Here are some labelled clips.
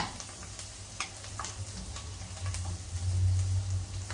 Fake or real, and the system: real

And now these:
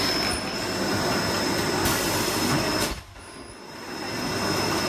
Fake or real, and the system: real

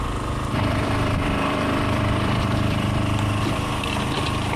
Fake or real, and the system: fake, vocoder, BigVGAN v2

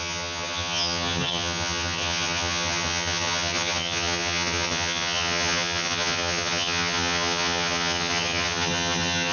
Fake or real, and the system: fake, vocoder, HiFi-GAN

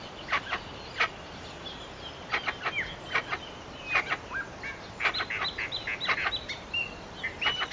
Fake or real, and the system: real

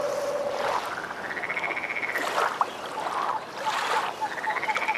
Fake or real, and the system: real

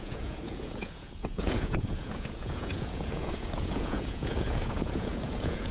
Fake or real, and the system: fake, vocoder, Vocos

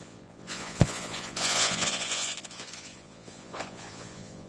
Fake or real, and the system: fake, vocoder, Vocos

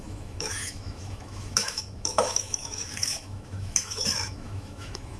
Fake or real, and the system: fake, autoencoder, DAC-VAE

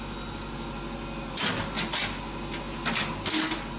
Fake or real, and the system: real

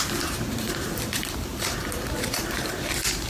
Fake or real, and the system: fake, vocoder, BigVGAN v2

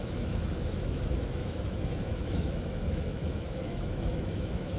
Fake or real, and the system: fake, autoencoder, DAC-VAE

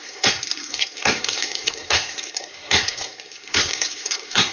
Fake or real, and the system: fake, codec, SNAC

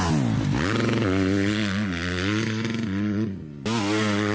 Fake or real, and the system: real